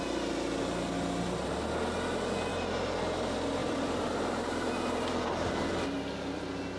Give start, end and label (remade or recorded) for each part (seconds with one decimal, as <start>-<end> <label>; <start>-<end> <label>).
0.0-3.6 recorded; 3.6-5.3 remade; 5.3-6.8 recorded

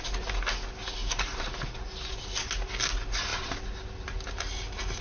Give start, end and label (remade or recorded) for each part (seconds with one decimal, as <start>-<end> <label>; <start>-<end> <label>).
0.0-1.0 recorded; 1.0-1.6 remade; 1.6-5.0 recorded

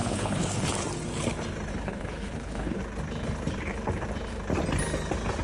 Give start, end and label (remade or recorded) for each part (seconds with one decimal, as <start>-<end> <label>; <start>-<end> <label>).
0.0-0.7 remade; 0.7-1.7 recorded; 1.7-2.8 remade; 2.8-5.4 recorded

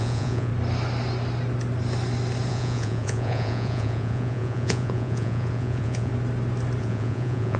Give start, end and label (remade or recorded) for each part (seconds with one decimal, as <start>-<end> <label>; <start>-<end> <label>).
0.0-0.5 remade; 0.5-2.5 recorded; 2.5-6.1 remade; 6.1-6.8 recorded; 6.8-7.6 remade